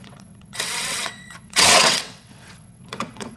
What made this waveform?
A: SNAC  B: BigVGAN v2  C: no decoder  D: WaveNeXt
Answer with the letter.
D